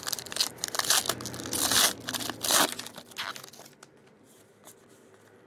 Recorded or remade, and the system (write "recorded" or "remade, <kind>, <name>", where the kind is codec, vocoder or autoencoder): recorded